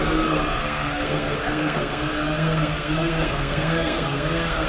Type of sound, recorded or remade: remade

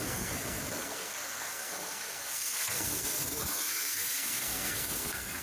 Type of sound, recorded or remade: remade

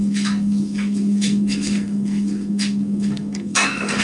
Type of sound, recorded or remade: remade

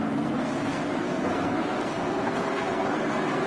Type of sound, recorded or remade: remade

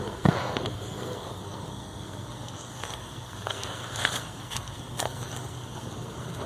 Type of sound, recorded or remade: remade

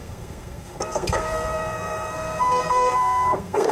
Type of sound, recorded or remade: remade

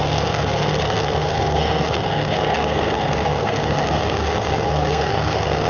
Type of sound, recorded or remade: remade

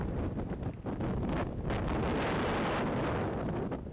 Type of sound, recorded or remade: recorded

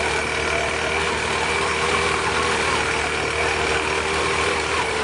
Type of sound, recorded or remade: recorded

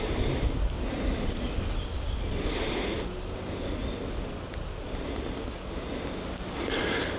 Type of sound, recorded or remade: recorded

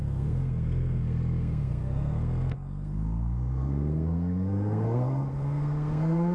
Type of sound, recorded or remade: remade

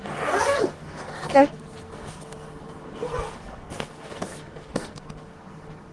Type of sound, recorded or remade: remade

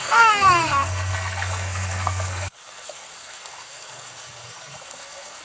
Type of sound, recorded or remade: remade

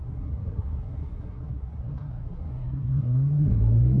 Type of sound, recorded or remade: remade